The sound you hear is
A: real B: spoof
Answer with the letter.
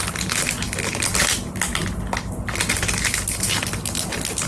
A